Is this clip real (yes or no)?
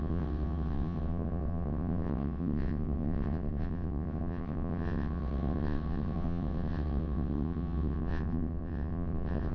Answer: no